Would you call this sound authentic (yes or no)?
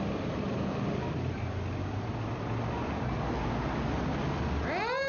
yes